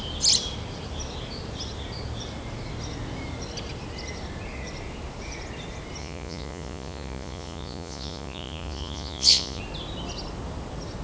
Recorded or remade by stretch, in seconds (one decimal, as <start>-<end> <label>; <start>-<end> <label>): 0.0-6.0 recorded; 6.0-9.6 remade; 9.6-11.0 recorded